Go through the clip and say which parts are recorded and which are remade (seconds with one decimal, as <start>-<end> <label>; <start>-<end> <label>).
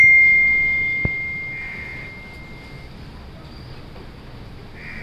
0.0-5.0 recorded